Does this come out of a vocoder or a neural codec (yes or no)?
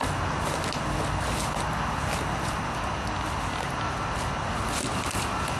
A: no